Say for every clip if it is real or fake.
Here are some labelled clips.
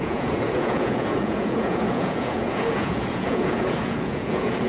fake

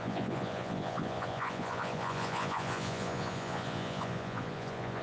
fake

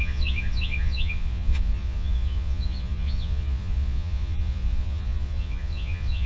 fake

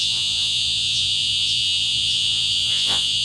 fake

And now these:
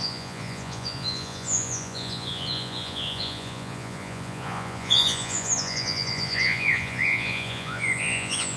fake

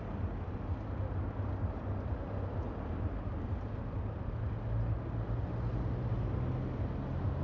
real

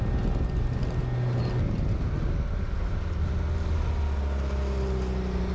real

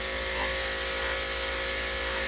real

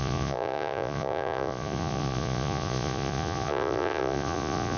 fake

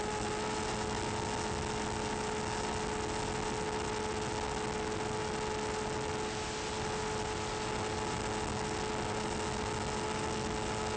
real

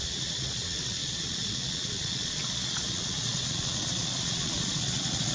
fake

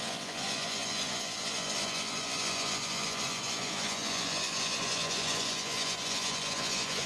fake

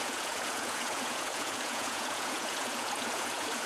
fake